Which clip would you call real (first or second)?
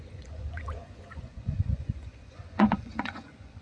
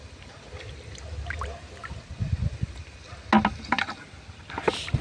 second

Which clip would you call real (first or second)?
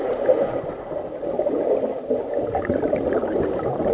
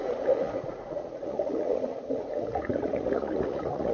first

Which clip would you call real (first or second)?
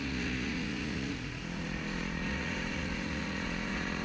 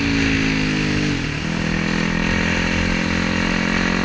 second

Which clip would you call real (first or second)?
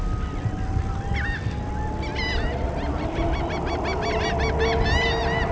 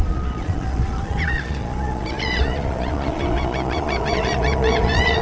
first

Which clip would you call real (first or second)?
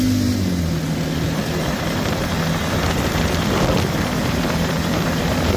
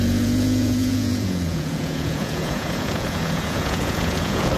first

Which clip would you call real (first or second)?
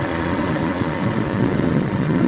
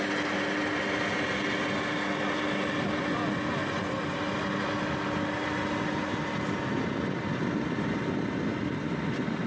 second